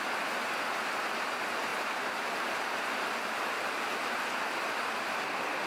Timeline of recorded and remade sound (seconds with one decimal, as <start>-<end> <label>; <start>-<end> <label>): 0.0-1.7 recorded; 1.7-3.9 remade; 3.9-5.7 recorded